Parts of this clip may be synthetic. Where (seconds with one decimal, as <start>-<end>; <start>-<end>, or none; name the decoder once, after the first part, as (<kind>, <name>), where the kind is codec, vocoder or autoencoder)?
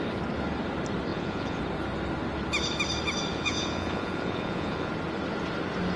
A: 1.1-1.6 (vocoder, Vocos); 3.3-4.9